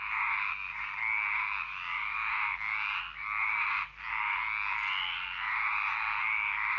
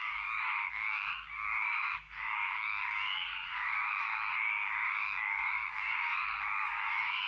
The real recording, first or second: first